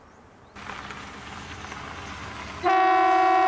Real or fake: real